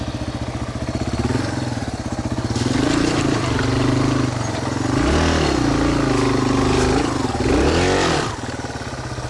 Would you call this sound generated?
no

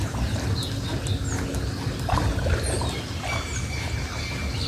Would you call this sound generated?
no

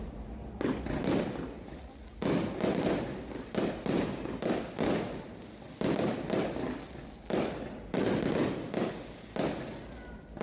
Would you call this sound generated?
no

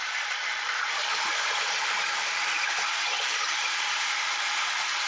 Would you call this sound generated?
yes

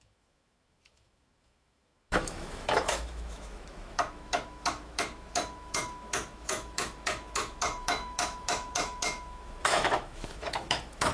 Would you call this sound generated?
yes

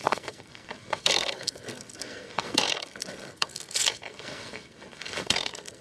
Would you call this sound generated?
yes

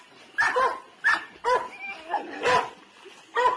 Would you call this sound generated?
no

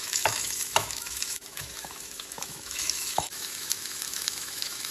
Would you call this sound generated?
yes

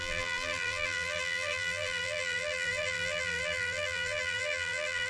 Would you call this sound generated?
yes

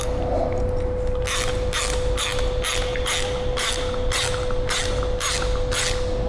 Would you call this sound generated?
no